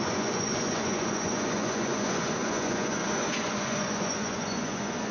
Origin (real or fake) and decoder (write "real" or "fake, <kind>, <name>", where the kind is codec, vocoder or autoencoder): fake, vocoder, Vocos